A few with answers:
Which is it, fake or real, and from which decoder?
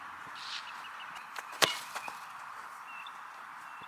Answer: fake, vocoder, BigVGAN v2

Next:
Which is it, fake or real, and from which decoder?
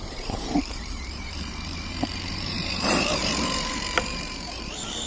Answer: fake, vocoder, BigVGAN v2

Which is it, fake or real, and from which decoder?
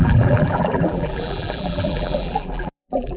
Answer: fake, vocoder, BigVGAN v2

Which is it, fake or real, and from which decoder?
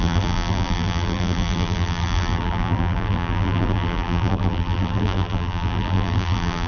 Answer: fake, vocoder, BigVGAN v2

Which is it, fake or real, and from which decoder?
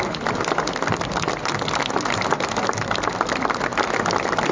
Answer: fake, vocoder, BigVGAN v2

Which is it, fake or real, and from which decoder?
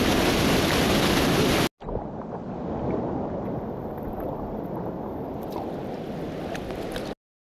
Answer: real